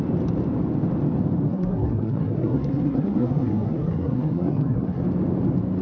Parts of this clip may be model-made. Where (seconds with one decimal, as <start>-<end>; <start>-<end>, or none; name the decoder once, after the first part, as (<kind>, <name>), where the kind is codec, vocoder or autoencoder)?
1.5-5.0 (codec, SNAC)